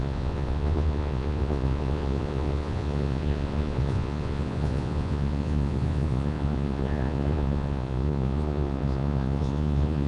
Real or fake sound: fake